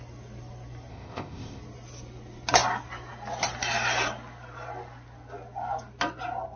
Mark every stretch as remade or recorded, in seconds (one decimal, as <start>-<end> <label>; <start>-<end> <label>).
0.0-0.9 recorded; 0.9-1.6 remade; 1.6-6.6 recorded